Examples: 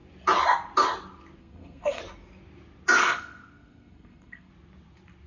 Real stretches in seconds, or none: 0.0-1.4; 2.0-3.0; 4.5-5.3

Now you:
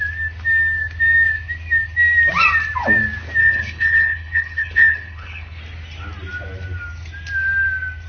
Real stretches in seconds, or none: 0.0-3.4; 5.6-8.1

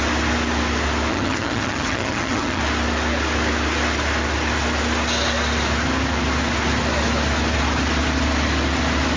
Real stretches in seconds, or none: 0.0-1.1; 2.6-9.2